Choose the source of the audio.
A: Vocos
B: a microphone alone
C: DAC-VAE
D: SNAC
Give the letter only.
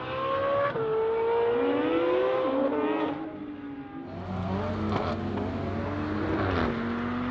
B